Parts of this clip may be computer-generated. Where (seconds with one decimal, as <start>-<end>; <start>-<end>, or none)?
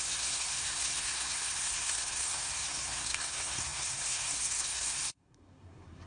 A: 0.0-6.1